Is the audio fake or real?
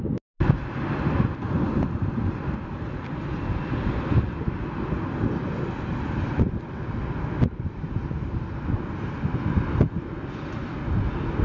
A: real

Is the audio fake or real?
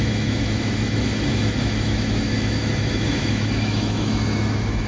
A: fake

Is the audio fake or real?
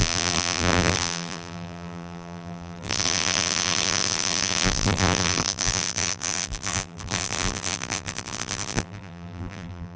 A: fake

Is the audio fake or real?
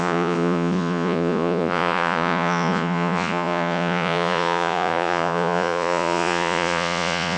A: fake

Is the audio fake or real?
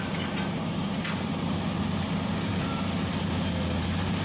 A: real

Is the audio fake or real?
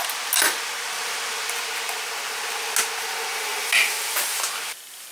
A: real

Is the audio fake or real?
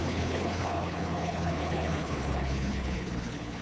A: fake